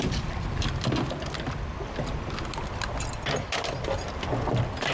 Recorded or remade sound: recorded